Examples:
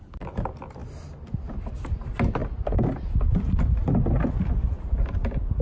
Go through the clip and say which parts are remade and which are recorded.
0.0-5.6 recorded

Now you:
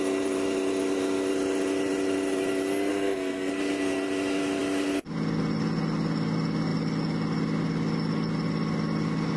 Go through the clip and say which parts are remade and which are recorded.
0.0-2.9 recorded; 2.9-3.5 remade; 3.5-9.4 recorded

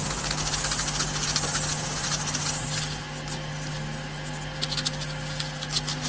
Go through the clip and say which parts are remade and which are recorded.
0.0-6.1 recorded

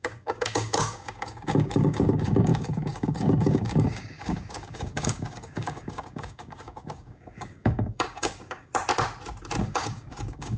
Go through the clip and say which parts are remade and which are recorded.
0.0-8.7 remade; 8.7-9.6 recorded; 9.6-10.6 remade

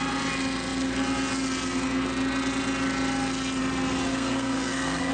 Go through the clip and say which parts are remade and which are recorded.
0.0-4.1 recorded; 4.1-5.1 remade

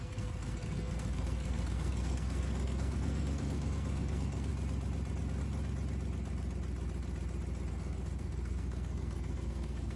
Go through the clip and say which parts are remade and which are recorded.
0.0-4.5 remade; 4.5-7.7 recorded; 7.7-10.0 remade